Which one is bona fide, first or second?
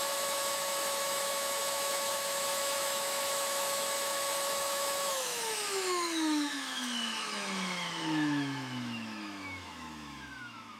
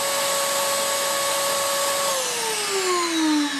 second